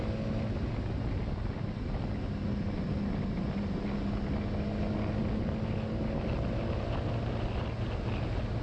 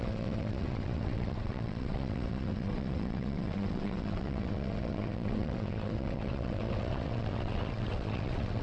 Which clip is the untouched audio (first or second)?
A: first